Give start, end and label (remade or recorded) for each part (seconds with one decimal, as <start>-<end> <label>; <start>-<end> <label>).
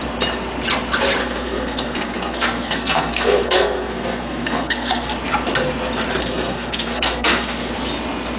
0.0-1.2 recorded; 1.2-5.1 remade; 5.1-6.2 recorded; 6.2-7.7 remade; 7.7-8.4 recorded